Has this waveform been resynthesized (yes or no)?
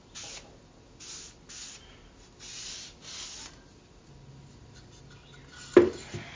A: no